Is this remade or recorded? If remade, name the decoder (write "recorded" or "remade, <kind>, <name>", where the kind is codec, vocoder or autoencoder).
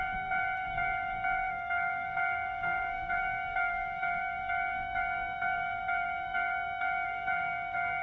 remade, codec, SNAC